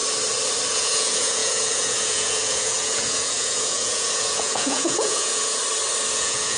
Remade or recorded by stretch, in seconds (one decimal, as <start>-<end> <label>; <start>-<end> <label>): 0.0-0.7 recorded; 0.7-5.6 remade; 5.6-6.1 recorded; 6.1-6.6 remade